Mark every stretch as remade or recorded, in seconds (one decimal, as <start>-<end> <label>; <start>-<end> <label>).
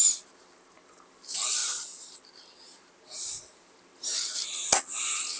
0.0-5.4 recorded